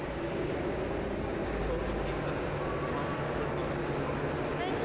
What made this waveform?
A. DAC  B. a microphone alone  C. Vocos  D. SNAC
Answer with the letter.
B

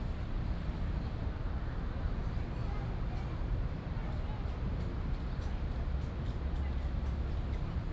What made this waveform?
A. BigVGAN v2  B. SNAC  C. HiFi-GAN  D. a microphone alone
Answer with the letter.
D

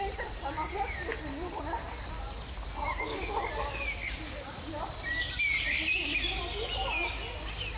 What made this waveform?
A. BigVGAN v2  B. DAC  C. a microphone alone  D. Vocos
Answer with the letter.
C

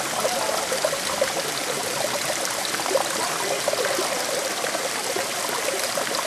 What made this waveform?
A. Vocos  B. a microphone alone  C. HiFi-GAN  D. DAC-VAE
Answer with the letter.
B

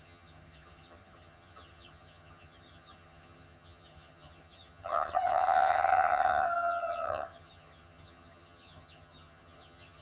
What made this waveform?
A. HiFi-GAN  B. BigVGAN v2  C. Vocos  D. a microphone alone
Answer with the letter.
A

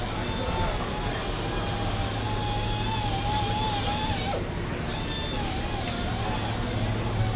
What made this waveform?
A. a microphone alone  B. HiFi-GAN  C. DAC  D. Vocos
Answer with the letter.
A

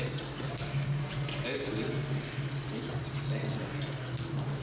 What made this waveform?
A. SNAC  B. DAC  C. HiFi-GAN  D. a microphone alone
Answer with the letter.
D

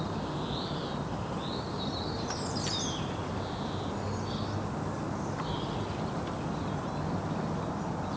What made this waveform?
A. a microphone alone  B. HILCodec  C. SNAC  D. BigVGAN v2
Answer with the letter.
A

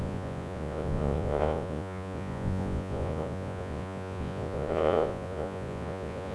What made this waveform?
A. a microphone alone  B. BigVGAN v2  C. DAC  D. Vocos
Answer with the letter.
D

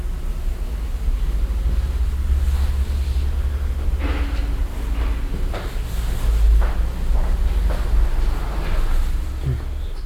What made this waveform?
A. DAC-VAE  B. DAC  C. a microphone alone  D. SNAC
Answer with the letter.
C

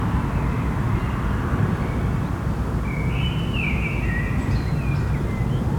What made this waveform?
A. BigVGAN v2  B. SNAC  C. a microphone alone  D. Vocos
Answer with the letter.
C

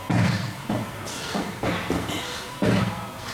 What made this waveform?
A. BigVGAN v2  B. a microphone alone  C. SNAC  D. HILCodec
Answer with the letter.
C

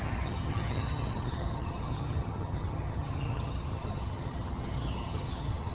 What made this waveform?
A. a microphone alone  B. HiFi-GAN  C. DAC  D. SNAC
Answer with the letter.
B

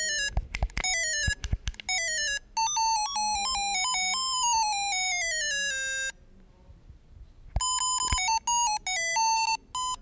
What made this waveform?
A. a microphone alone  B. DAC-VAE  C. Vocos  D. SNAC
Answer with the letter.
A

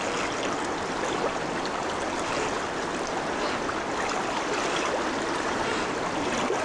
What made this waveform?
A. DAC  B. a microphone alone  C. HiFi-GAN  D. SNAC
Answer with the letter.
B